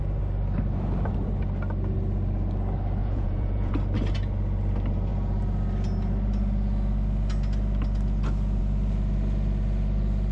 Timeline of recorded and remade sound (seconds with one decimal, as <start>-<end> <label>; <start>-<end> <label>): 0.0-3.0 recorded; 3.0-3.7 remade; 3.7-10.3 recorded